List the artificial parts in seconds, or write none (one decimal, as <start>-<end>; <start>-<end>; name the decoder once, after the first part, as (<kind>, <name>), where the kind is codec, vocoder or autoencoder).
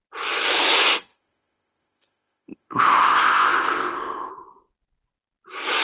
1.1-4.3 (codec, ZipCodec)